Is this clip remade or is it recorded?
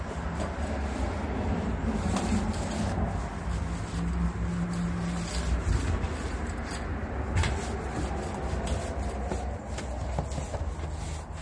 recorded